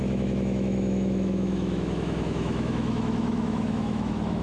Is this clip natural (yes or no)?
no